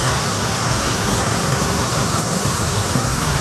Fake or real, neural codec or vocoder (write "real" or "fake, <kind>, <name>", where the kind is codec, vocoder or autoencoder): fake, codec, SNAC